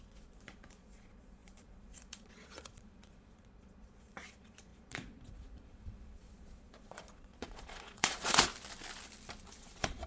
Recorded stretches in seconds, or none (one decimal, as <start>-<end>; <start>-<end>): 8.5-9.6